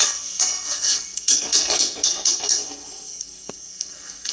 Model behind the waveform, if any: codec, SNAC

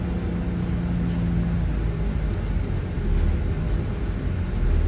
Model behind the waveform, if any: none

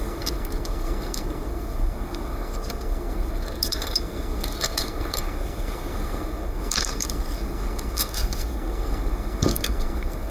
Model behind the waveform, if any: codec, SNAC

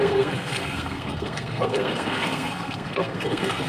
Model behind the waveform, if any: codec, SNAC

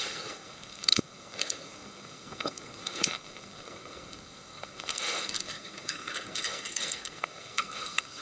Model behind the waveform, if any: codec, SNAC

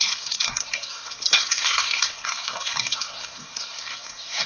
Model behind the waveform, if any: codec, SNAC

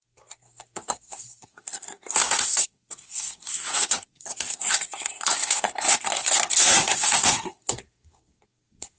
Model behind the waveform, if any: codec, SNAC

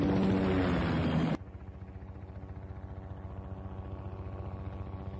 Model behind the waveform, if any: none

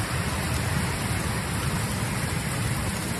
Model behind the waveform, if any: none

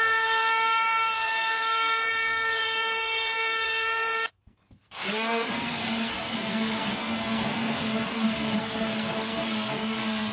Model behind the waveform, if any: codec, SNAC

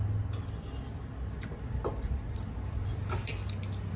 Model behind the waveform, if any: none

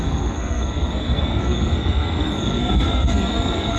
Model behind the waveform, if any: codec, SNAC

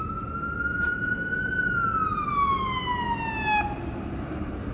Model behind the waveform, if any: none